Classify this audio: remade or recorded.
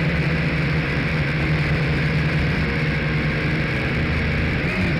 recorded